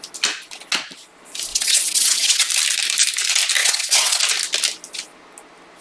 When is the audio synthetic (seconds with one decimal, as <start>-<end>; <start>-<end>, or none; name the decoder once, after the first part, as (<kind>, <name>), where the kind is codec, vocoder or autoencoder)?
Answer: 1.5-2.5 (vocoder, WaveNeXt); 3.6-4.2